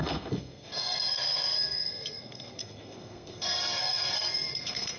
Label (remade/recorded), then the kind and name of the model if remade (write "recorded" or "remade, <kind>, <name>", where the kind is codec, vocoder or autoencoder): remade, codec, SNAC